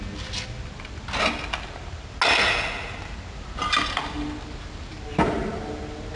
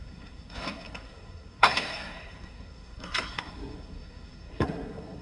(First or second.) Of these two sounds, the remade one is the second